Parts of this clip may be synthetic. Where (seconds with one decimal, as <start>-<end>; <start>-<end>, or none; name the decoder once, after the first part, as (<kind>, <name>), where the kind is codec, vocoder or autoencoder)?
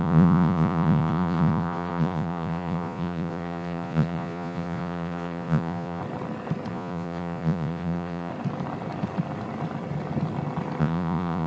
0.0-6.0 (vocoder, Vocos); 6.7-8.3; 10.8-11.5